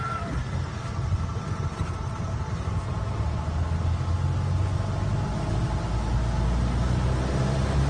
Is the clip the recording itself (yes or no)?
yes